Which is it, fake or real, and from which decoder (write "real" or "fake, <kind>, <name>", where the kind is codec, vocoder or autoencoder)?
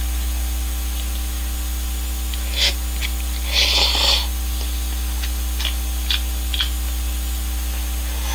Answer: real